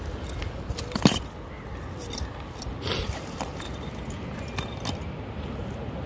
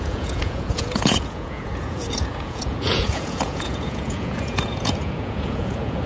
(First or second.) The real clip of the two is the first